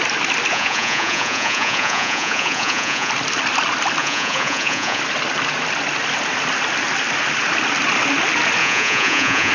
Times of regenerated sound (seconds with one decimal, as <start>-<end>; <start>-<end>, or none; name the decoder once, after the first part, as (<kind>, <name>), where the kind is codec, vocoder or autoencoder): 0.5-3.1 (vocoder, Vocos); 4.0-5.0; 8.6-9.5